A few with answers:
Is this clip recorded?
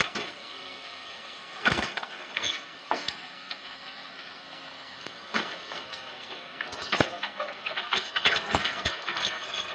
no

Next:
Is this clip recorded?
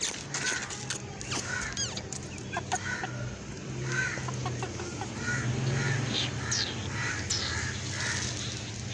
yes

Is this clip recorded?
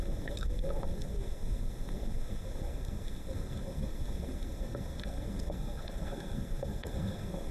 no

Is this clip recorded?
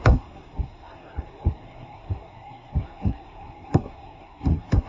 no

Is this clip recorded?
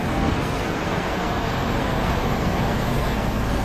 no